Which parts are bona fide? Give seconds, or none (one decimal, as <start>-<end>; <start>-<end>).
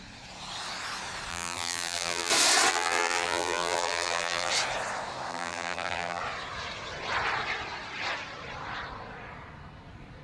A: 0.0-1.3; 2.3-2.7; 4.5-5.3; 6.2-10.2